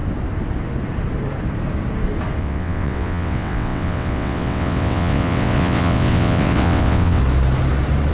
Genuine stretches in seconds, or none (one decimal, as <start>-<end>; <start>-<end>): 0.0-2.4; 7.2-8.1